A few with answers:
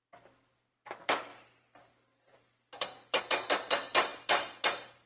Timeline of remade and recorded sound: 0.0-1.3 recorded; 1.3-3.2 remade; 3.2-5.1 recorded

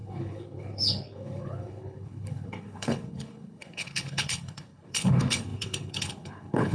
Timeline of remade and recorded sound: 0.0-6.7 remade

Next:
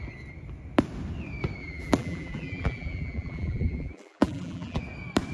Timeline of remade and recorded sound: 0.0-1.6 recorded; 1.6-4.8 remade; 4.8-5.3 recorded

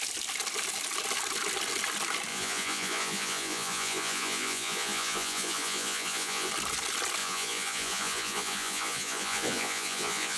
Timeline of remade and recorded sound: 0.0-2.3 recorded; 2.3-6.5 remade; 6.5-7.2 recorded; 7.2-10.4 remade

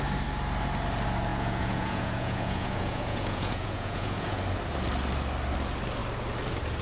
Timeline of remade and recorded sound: 0.0-1.3 recorded; 1.3-4.4 remade; 4.4-6.8 recorded

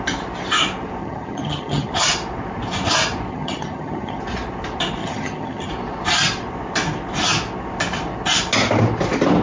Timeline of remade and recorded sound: 0.0-1.0 recorded; 1.0-1.9 remade; 1.9-3.3 recorded; 3.3-4.2 remade; 4.2-5.0 recorded; 5.0-5.7 remade; 5.7-9.4 recorded

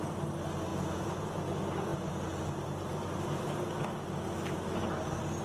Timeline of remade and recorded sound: 0.0-0.7 recorded; 0.7-1.3 remade; 1.3-5.4 recorded

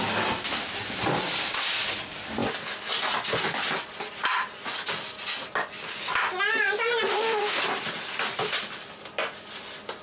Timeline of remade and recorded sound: 0.0-7.1 recorded; 7.1-7.6 remade; 7.6-10.0 recorded